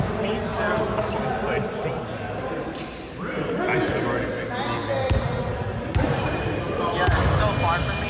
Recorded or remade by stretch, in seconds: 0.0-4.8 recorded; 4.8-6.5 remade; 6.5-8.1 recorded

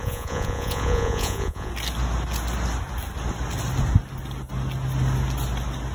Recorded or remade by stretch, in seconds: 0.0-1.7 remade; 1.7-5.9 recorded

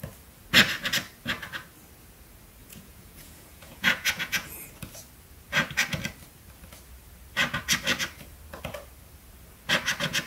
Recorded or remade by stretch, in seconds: 0.0-2.6 recorded; 2.6-4.6 remade; 4.6-10.3 recorded